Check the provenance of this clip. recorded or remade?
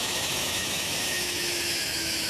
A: remade